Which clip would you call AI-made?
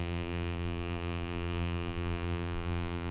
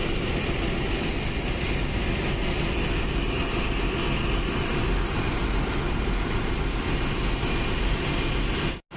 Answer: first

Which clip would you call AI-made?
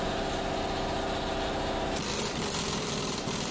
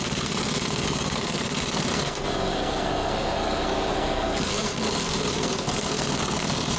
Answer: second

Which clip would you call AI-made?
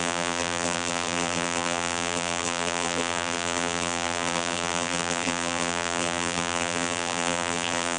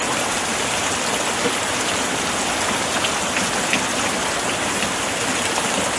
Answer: first